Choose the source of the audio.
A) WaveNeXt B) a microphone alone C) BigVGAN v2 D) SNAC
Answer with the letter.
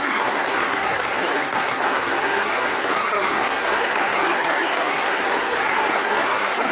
D